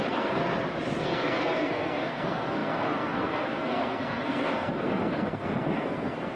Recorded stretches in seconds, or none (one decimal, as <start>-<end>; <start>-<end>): 0.4-1.0